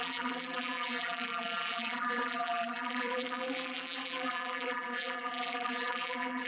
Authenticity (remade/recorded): remade